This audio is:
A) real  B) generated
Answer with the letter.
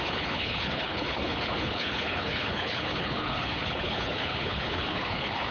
B